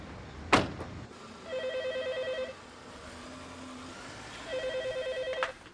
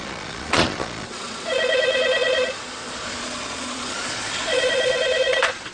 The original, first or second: first